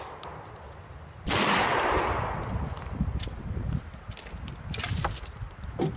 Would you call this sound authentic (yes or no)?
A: yes